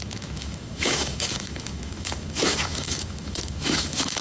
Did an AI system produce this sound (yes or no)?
yes